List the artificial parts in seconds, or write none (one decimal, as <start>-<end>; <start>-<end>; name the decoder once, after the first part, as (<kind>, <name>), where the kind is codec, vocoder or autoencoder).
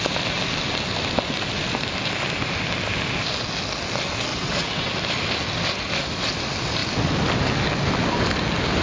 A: 4.3-4.9 (vocoder, WaveNeXt)